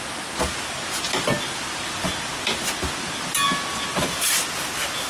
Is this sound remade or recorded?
recorded